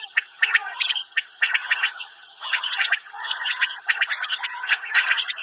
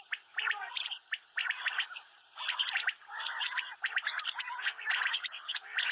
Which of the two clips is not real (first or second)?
first